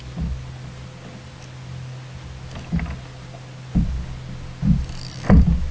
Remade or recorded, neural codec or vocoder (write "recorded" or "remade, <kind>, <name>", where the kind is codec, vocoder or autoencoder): recorded